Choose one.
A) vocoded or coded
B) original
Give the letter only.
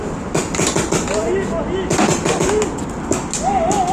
B